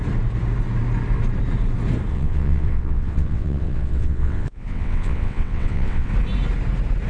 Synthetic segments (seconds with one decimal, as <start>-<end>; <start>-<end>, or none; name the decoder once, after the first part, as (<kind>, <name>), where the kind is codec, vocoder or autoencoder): 2.1-6.1 (vocoder, WaveNeXt)